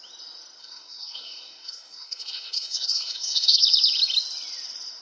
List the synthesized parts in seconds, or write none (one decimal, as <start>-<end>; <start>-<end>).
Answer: 0.6-3.6

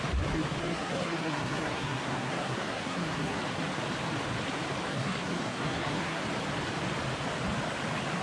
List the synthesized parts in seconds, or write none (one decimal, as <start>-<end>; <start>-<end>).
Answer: 0.6-3.4; 4.9-6.2

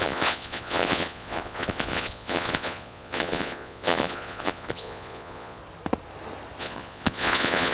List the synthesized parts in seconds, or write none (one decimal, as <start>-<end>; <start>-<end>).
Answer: 0.0-5.6; 6.6-7.7

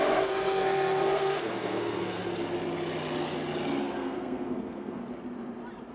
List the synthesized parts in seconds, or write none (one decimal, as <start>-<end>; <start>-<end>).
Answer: 0.0-2.2; 3.8-5.0

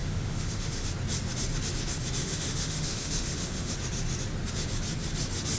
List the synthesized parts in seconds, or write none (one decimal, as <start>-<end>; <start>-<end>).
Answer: 0.0-0.9; 2.2-3.7